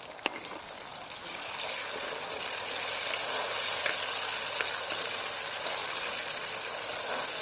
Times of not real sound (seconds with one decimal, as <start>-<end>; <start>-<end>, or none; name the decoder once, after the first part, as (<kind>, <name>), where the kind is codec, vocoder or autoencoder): none